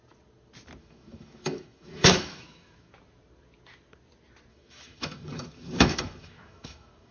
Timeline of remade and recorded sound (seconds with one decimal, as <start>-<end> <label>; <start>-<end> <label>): 0.0-0.8 recorded; 0.8-2.9 remade; 2.9-4.5 recorded; 4.5-7.1 remade